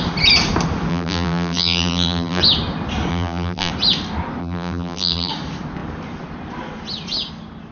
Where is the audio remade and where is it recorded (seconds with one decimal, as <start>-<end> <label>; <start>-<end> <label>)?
0.0-0.9 recorded; 0.9-2.4 remade; 2.4-3.1 recorded; 3.1-3.7 remade; 3.7-4.4 recorded; 4.4-5.3 remade; 5.3-7.7 recorded